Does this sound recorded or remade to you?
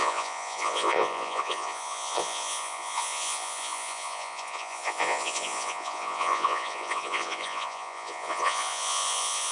remade